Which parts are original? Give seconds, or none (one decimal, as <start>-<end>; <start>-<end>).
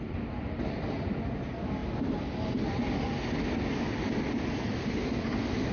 0.0-5.7